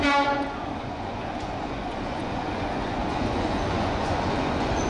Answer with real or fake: fake